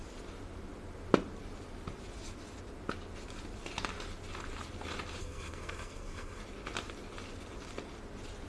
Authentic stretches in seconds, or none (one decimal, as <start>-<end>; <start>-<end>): 0.0-5.2; 6.4-8.5